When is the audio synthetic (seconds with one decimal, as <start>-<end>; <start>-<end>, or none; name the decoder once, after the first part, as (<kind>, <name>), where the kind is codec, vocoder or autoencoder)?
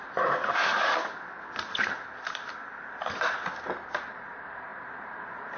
0.0-0.7 (vocoder, BigVGAN v2); 4.1-5.6